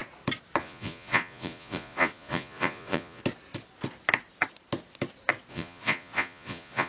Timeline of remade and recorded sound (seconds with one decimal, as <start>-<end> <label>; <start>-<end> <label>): 0.0-0.6 recorded; 0.6-3.2 remade; 3.2-5.5 recorded; 5.5-6.9 remade